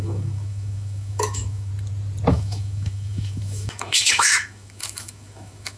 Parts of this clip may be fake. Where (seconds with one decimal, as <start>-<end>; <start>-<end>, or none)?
0.0-1.7; 2.3-5.8